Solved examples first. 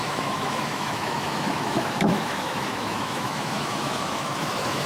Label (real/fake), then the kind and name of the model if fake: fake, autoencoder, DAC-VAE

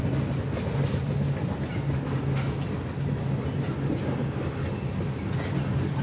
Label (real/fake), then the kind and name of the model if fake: real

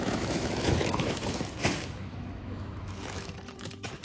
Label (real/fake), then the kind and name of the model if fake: fake, autoencoder, DAC-VAE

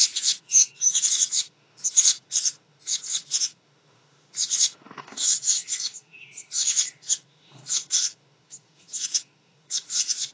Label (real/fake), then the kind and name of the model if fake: fake, autoencoder, DAC-VAE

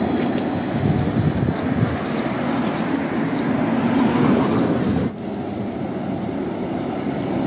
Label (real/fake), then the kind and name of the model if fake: real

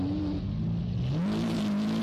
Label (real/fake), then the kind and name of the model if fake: real